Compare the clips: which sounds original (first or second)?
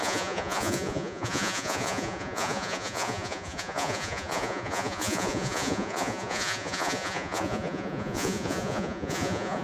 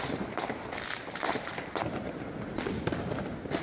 second